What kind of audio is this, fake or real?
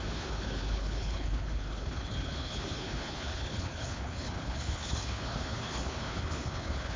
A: fake